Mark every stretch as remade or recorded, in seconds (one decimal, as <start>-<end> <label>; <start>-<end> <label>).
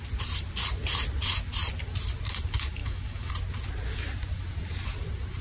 0.0-2.8 recorded; 2.8-3.3 remade; 3.3-5.4 recorded